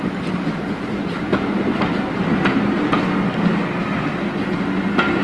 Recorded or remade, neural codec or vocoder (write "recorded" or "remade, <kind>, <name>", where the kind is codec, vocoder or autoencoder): recorded